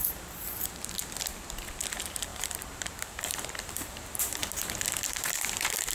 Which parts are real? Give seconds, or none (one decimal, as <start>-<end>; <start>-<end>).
1.0-1.9; 4.4-5.1